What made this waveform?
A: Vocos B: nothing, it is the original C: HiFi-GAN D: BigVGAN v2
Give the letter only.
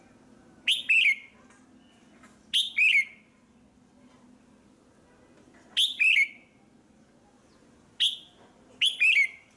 B